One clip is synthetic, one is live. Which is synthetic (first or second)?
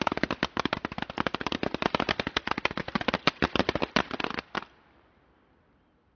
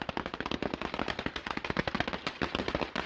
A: first